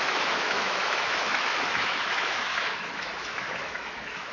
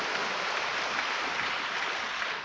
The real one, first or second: second